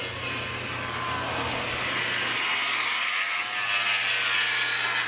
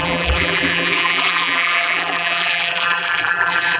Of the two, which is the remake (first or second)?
second